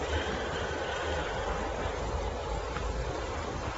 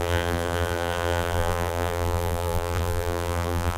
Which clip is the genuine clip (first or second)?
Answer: first